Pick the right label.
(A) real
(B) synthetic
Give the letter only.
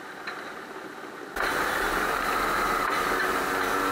A